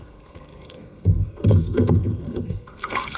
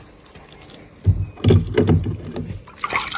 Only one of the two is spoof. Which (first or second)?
first